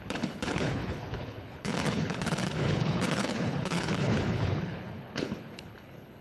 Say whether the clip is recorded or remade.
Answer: remade